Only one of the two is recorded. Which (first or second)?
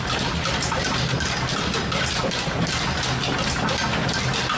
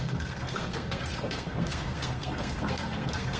first